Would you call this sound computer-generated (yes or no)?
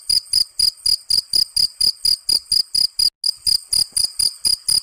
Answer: no